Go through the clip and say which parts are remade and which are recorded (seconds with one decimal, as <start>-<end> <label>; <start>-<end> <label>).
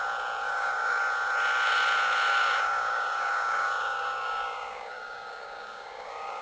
0.0-0.4 recorded; 0.4-1.0 remade; 1.0-2.3 recorded; 2.3-6.4 remade